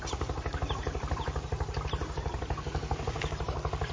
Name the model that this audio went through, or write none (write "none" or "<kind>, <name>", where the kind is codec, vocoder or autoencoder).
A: none